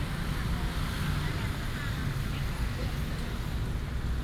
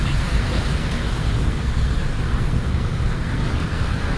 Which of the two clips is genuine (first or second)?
first